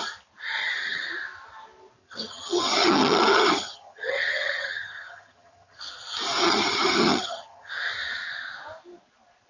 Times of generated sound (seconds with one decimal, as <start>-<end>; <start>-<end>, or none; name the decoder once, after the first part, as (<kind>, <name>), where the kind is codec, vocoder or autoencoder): 0.6-1.1 (vocoder, HiFi-GAN); 2.0-5.8; 6.4-7.7